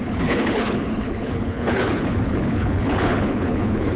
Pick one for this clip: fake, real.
fake